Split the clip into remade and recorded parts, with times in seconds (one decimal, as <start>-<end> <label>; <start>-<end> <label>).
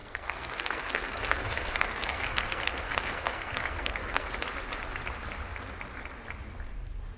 0.0-4.3 remade; 4.3-7.2 recorded